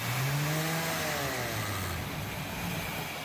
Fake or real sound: real